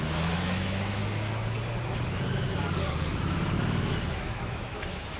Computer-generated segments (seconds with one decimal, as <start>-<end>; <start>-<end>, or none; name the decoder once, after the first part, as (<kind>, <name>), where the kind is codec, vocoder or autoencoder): 0.0-1.0 (autoencoder, DAC-VAE); 4.1-5.2